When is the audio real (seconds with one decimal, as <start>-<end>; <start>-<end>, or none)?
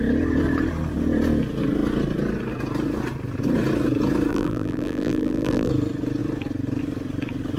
0.0-4.3; 5.7-7.6